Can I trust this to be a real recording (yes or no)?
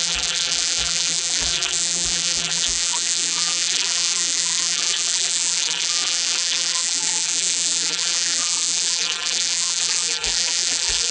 no